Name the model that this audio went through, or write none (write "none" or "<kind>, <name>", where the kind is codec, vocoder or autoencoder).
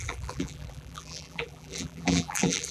vocoder, BigVGAN v2